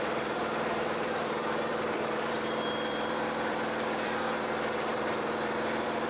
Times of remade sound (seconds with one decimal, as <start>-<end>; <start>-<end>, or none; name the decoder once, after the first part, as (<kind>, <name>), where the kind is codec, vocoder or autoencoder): 0.0-6.1 (vocoder, BigVGAN v2)